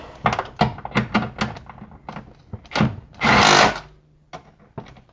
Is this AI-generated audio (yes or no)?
no